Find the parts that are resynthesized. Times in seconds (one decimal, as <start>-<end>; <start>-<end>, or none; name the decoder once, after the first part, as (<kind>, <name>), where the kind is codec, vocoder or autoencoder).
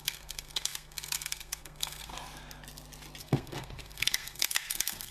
0.0-2.1 (codec, SNAC); 3.2-5.1